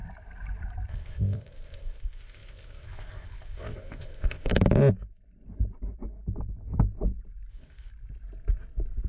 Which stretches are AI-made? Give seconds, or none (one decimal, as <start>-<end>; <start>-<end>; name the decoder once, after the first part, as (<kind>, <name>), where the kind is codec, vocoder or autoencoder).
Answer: 0.9-4.5 (codec, ZipCodec); 7.5-7.9